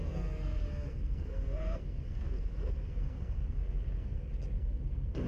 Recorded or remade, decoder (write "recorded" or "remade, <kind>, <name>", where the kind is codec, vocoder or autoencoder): remade, codec, SNAC